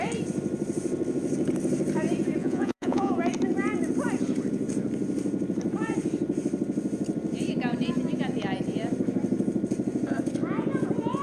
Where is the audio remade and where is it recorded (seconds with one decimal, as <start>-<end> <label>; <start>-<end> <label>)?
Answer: 0.0-2.4 recorded; 2.4-3.1 remade; 3.1-11.2 recorded

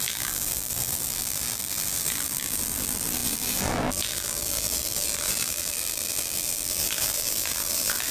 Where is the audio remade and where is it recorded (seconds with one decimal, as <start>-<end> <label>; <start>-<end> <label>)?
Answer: 0.0-8.1 remade

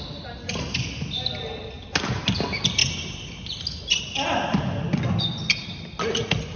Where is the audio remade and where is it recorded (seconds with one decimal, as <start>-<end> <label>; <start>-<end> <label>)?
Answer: 0.0-6.6 recorded

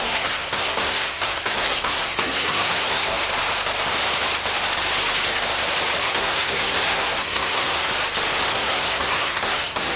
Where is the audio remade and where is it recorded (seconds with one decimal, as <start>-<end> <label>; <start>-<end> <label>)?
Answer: 0.0-3.2 remade; 3.2-6.0 recorded; 6.0-7.9 remade; 7.9-8.5 recorded; 8.5-10.0 remade

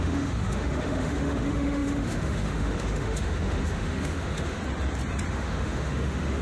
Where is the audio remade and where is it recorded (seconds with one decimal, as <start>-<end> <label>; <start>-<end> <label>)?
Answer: 0.0-4.6 remade; 4.6-5.3 recorded; 5.3-6.4 remade

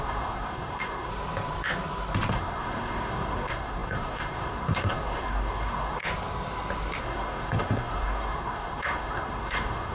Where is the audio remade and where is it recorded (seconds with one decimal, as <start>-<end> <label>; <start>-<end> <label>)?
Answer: 0.0-1.1 remade; 1.1-2.3 recorded; 2.3-6.0 remade; 6.0-7.0 recorded; 7.0-9.9 remade

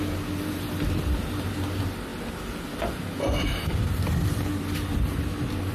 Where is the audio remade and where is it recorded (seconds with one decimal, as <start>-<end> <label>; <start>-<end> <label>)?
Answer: 0.0-5.7 recorded

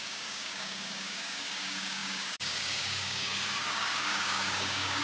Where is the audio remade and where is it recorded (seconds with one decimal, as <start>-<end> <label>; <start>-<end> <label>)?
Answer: 0.0-5.0 remade